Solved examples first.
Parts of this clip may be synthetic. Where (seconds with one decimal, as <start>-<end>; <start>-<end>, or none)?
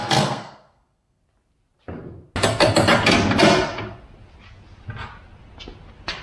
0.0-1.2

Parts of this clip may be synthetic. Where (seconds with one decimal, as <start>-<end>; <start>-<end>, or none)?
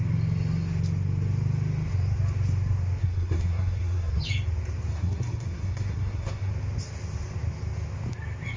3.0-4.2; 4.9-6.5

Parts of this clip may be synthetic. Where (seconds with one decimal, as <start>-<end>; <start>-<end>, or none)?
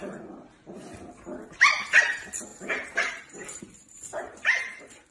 2.5-3.6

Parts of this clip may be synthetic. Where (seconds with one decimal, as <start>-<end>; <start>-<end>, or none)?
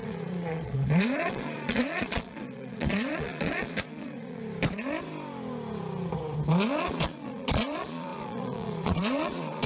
0.0-4.4; 6.7-9.7